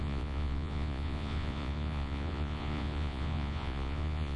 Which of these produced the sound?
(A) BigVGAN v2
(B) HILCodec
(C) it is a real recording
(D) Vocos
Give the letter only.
D